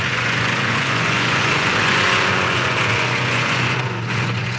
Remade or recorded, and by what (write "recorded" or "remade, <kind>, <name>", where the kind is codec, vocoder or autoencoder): remade, vocoder, Vocos